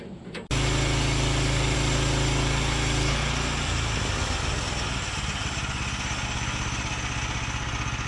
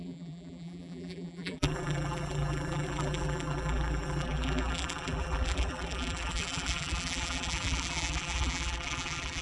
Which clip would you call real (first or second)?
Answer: first